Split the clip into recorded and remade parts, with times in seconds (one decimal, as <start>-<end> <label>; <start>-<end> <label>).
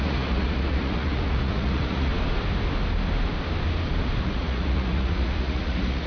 0.0-2.1 remade; 2.1-4.2 recorded; 4.2-6.1 remade